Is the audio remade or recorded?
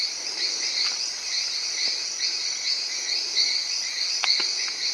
recorded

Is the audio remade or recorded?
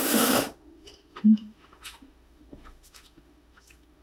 remade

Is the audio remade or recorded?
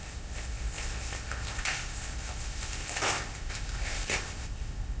remade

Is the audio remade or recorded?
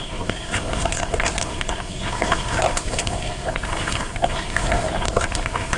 remade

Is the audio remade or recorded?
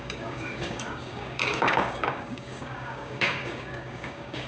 remade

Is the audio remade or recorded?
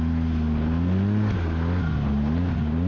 recorded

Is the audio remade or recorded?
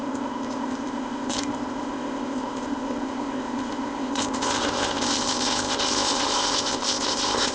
remade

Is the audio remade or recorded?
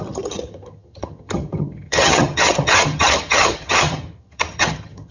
remade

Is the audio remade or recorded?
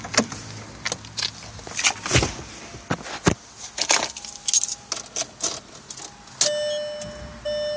recorded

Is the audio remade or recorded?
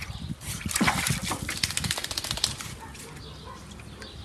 recorded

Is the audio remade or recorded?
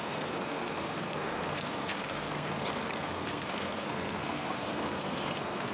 remade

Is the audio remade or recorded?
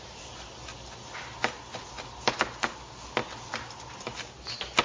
recorded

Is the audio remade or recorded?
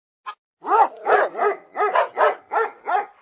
recorded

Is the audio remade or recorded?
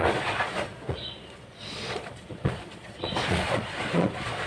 remade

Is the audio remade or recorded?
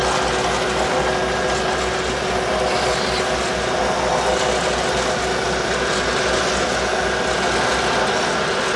recorded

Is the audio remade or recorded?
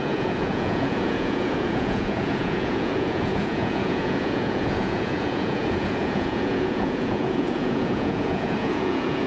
remade